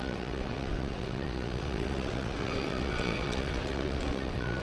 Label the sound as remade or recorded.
remade